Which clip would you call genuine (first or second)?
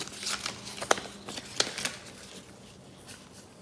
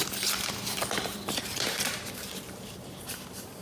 first